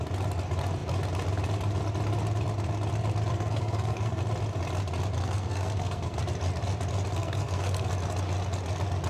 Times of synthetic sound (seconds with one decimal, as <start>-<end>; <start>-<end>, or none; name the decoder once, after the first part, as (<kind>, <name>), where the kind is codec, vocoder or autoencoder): 3.3-4.2 (codec, SNAC); 5.2-6.2; 7.1-7.9